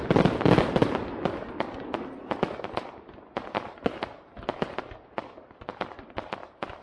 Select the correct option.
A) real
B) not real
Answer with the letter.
A